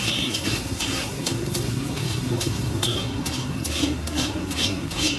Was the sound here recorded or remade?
remade